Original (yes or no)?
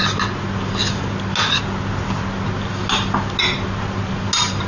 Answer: yes